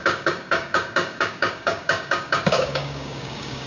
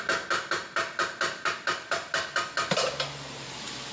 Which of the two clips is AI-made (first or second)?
first